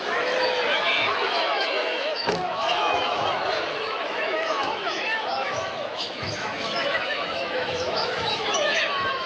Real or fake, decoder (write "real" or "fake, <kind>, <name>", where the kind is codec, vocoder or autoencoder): fake, autoencoder, DAC-VAE